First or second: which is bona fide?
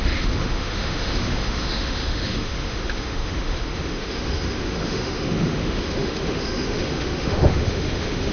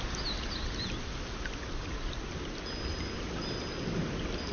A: second